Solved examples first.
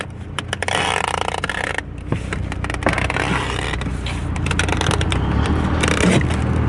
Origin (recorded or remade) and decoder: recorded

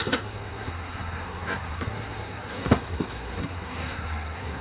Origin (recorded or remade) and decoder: remade, codec, SNAC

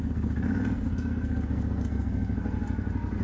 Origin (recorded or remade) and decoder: remade, codec, SNAC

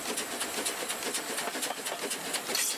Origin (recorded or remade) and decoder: recorded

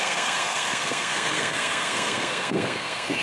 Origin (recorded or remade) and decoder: remade, codec, SNAC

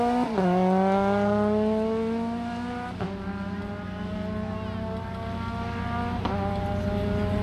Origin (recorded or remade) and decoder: recorded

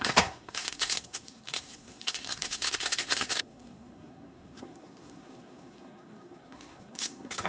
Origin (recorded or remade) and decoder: remade, codec, SNAC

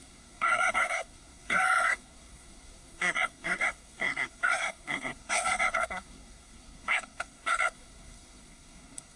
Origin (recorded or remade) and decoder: remade, codec, SNAC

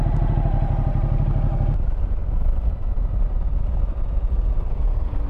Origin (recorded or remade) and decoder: recorded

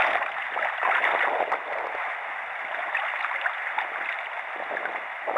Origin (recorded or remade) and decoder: recorded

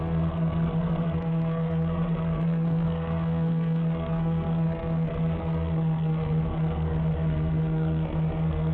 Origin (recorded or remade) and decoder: remade, codec, SNAC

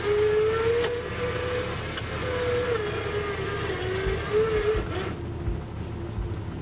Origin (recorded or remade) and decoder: recorded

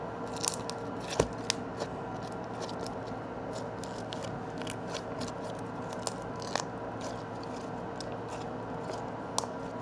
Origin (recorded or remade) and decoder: recorded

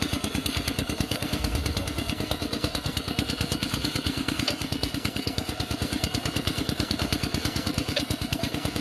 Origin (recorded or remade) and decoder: remade, codec, SNAC